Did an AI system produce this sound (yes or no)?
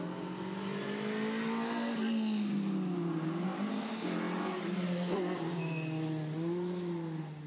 no